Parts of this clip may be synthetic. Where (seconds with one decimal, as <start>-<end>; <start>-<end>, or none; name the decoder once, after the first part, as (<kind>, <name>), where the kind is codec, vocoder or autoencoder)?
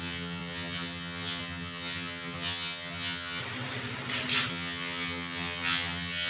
0.0-3.4 (vocoder, HiFi-GAN); 4.5-6.3